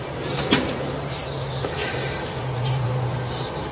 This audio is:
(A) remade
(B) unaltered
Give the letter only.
A